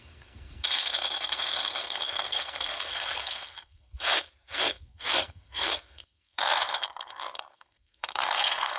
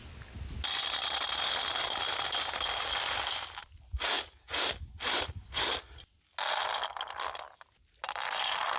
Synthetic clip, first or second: first